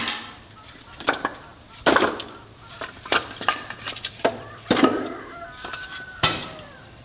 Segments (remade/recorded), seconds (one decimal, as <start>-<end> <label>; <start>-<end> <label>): 0.0-0.7 recorded; 0.7-7.0 remade